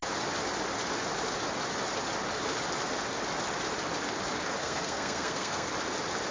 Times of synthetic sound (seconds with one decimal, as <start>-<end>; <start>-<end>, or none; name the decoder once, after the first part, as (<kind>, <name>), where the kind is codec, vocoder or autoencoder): 4.6-5.7 (codec, SNAC)